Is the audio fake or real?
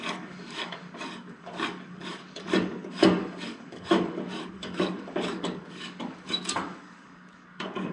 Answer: fake